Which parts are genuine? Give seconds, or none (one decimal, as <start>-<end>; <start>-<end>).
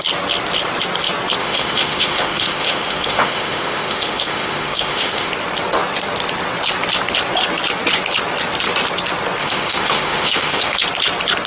0.0-1.4; 5.3-9.4; 10.8-11.5